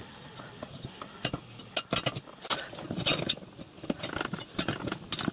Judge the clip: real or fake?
real